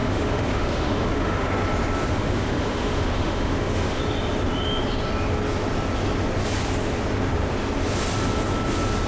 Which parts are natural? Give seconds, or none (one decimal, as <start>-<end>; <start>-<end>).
1.5-2.1; 4.0-9.1